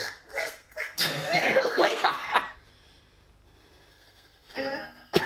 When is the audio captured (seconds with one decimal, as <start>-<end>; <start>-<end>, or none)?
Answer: 2.3-3.9

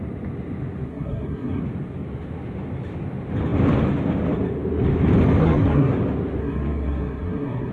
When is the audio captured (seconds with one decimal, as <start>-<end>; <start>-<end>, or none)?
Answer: 0.0-0.9; 1.6-5.4; 6.0-6.4

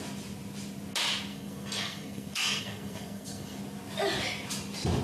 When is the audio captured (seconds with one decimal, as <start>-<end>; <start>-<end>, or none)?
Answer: 0.0-1.3; 3.6-5.0

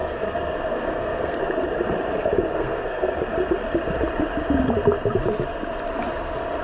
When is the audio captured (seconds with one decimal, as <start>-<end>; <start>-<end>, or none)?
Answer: 1.4-2.5; 3.1-6.6

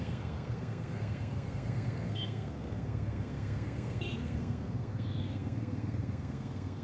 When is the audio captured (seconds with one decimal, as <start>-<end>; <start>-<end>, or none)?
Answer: none

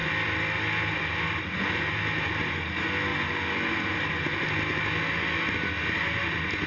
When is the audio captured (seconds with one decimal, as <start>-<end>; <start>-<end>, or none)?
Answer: 0.0-6.7

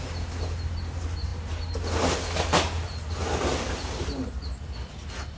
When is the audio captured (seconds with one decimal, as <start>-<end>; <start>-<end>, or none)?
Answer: 0.0-5.4

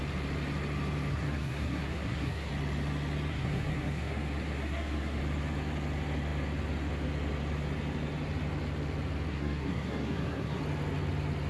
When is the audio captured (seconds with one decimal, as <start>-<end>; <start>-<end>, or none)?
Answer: 0.0-1.1; 2.5-3.3; 5.2-9.3; 10.6-11.5